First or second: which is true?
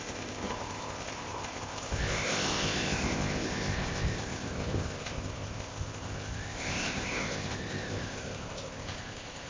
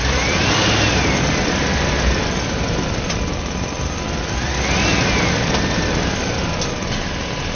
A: second